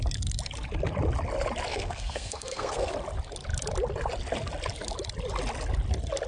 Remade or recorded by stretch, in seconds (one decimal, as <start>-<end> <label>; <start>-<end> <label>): 0.0-1.7 recorded; 1.7-2.9 remade; 2.9-6.3 recorded